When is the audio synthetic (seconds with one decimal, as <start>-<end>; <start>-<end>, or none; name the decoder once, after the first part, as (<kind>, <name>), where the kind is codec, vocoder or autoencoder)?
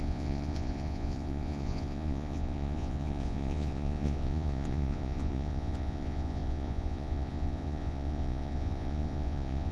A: 0.0-9.7 (vocoder, Vocos)